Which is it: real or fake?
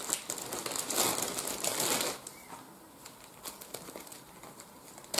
real